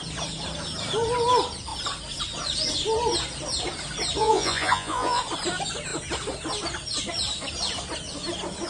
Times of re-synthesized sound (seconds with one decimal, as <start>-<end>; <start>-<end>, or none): 4.2-5.2